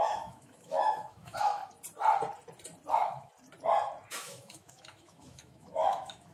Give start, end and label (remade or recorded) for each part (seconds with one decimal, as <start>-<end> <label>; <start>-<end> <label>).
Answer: 0.0-1.6 remade; 1.6-2.9 recorded; 2.9-3.3 remade; 3.3-4.1 recorded; 4.1-6.3 remade